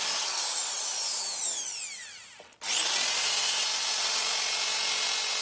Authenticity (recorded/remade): recorded